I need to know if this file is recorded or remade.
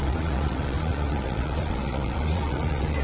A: remade